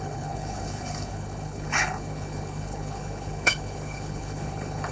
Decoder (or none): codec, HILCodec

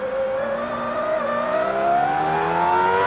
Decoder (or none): none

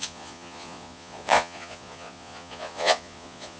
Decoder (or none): vocoder, Vocos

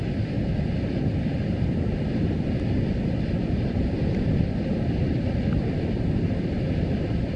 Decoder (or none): none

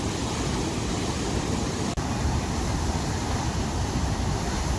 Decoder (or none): none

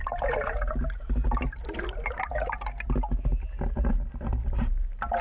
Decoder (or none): none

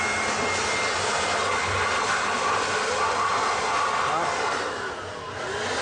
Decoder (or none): none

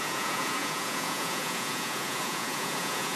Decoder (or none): vocoder, Vocos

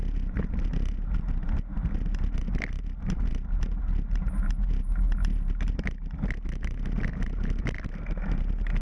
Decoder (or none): none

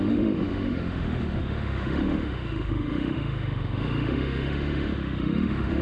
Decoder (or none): autoencoder, DAC-VAE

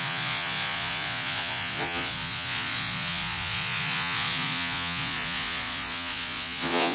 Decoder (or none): vocoder, Vocos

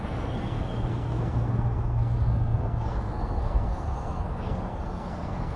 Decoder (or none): codec, SNAC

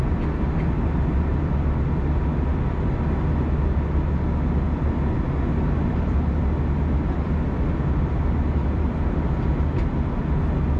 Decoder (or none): none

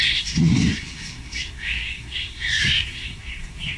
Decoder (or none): codec, SNAC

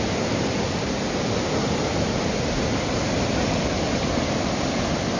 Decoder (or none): none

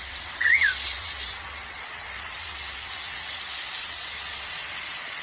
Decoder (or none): vocoder, WaveNeXt